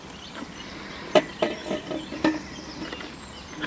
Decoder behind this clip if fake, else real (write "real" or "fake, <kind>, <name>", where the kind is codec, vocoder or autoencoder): fake, vocoder, BigVGAN v2